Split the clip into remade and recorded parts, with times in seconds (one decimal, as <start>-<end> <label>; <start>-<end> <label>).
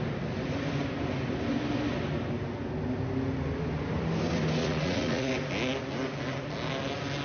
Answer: 0.0-4.6 recorded; 4.6-5.3 remade; 5.3-7.2 recorded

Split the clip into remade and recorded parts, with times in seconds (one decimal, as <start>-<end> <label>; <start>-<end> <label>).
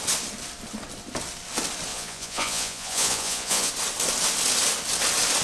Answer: 0.0-1.9 recorded; 1.9-3.7 remade; 3.7-5.4 recorded